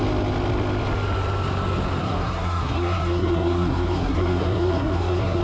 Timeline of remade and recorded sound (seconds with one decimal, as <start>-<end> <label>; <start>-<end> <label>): 0.0-2.0 recorded; 2.0-5.4 remade